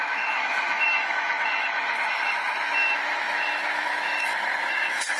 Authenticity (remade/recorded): remade